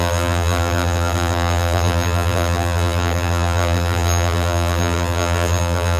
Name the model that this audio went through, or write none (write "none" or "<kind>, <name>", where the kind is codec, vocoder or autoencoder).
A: vocoder, BigVGAN v2